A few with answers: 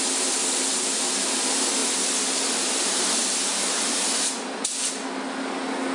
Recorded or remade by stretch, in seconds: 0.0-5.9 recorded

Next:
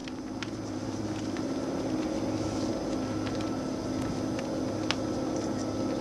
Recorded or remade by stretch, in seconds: 0.0-1.9 remade; 1.9-6.0 recorded

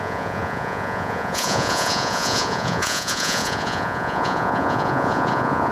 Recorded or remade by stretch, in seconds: 0.0-5.7 remade

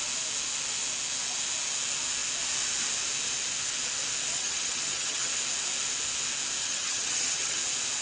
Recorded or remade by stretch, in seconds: 0.0-4.3 recorded; 4.3-5.3 remade; 5.3-6.6 recorded; 6.6-7.6 remade; 7.6-8.0 recorded